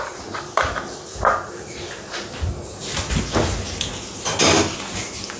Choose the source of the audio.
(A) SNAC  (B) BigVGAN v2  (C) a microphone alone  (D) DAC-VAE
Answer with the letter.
C